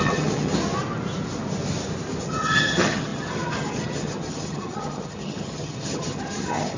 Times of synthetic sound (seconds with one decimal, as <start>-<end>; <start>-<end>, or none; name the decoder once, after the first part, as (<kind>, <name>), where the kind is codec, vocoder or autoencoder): 0.0-0.5 (vocoder, HiFi-GAN); 2.2-6.8